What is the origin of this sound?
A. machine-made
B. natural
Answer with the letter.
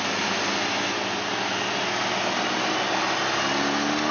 B